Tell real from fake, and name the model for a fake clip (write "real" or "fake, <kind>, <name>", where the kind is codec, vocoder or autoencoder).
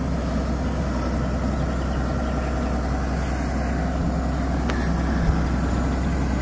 real